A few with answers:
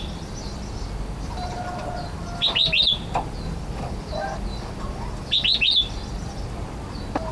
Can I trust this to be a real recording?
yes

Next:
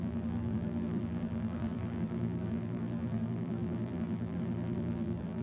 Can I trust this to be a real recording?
no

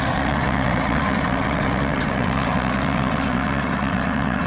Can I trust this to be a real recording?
no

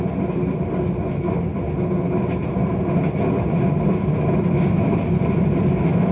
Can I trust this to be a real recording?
yes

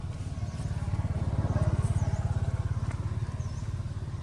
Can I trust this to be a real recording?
yes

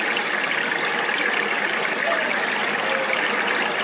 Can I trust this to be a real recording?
yes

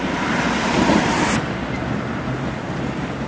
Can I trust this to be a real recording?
yes